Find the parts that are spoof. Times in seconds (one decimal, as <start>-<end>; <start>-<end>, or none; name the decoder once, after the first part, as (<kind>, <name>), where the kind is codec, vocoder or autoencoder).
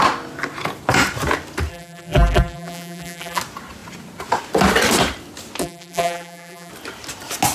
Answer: 1.7-3.4 (vocoder, BigVGAN v2); 5.6-6.7